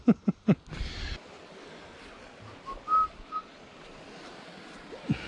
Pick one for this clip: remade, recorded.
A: recorded